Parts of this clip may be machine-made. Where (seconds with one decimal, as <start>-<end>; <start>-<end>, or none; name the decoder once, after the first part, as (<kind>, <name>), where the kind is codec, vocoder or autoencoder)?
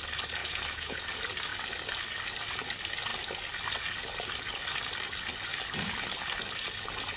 0.4-1.1 (autoencoder, DAC-VAE)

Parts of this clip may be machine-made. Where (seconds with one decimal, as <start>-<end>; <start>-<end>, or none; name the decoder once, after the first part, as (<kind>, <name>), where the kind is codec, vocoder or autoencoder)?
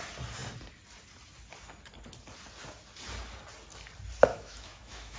4.3-5.2 (autoencoder, DAC-VAE)